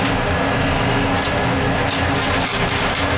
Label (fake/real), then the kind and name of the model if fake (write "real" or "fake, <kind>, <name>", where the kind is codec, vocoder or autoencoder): real